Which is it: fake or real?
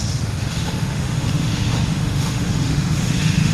fake